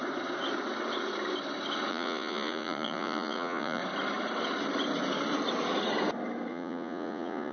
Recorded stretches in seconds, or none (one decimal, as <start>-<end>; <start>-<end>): 0.0-1.9; 3.8-6.5